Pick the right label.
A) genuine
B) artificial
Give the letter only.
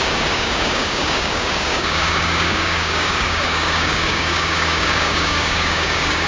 B